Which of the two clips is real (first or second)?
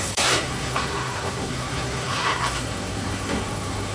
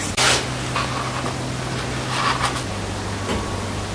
second